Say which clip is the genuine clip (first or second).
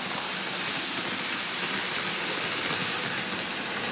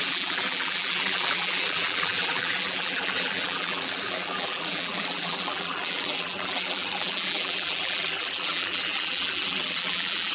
first